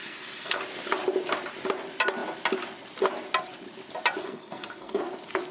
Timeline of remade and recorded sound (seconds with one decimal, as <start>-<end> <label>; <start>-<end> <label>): 0.0-0.6 remade; 0.6-4.2 recorded; 4.2-5.0 remade; 5.0-5.5 recorded